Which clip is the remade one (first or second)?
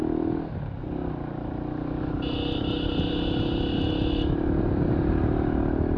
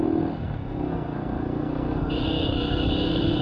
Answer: second